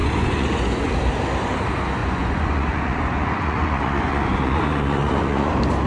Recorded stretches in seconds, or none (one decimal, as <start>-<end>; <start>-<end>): 0.9-2.0; 5.5-5.9